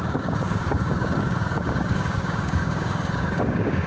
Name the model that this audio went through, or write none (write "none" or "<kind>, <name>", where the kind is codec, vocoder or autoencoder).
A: codec, DAC